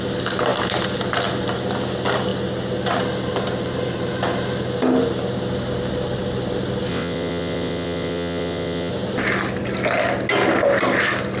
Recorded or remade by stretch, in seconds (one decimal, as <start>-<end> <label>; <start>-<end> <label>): 0.0-6.9 recorded; 6.9-8.9 remade; 8.9-11.4 recorded